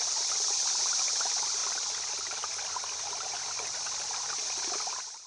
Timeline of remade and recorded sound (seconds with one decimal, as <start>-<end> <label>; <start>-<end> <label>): 0.0-5.3 recorded